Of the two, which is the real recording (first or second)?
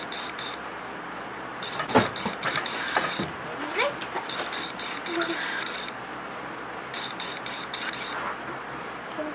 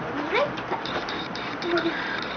first